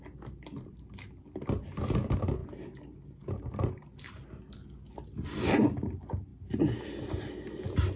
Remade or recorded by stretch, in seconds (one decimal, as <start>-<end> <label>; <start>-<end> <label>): 0.0-2.4 recorded; 2.4-4.4 remade; 4.4-6.3 recorded; 6.3-7.3 remade; 7.3-8.0 recorded